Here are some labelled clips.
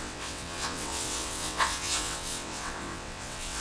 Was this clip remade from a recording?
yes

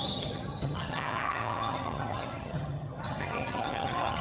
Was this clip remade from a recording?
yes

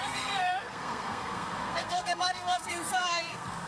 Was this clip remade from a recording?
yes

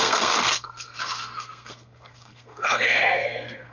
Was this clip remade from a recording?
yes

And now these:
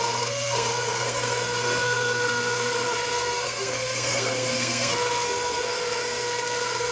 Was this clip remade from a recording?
yes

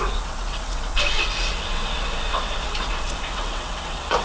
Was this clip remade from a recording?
yes